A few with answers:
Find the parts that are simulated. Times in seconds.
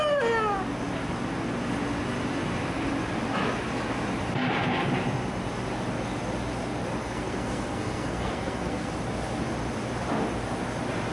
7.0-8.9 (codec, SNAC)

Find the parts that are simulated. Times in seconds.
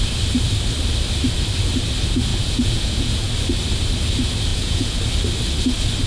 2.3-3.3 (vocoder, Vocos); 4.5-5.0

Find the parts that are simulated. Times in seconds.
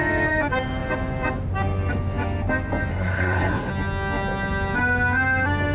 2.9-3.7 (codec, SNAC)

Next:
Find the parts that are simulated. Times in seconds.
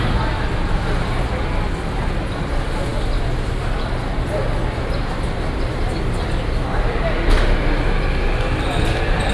none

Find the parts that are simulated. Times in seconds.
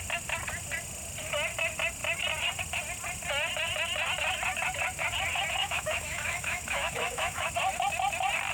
5.6-7.5 (autoencoder, DAC-VAE)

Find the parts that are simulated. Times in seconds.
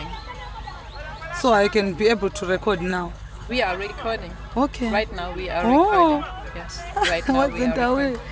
2.9-3.5 (codec, HILCodec)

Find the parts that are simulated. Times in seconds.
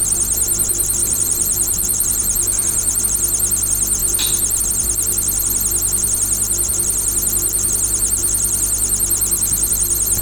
1.0-3.0 (vocoder, Vocos)